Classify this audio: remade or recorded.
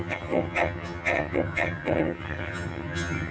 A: remade